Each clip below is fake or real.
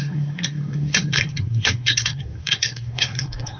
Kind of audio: fake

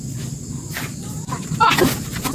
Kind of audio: real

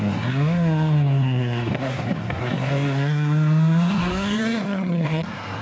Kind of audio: fake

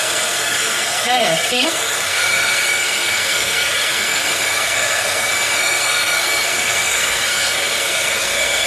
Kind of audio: fake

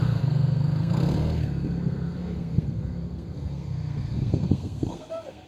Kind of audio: fake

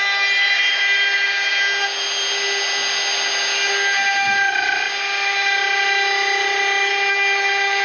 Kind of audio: real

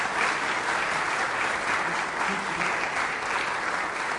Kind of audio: real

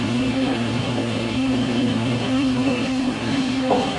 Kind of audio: fake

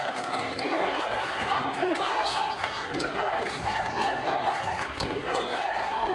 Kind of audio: fake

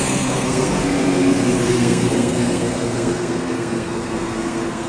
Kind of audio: fake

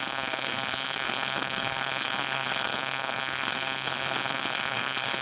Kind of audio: fake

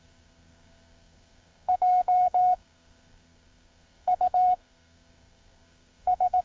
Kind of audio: fake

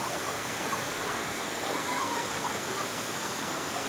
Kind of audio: fake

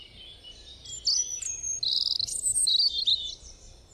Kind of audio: real